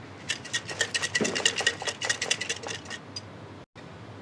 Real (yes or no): yes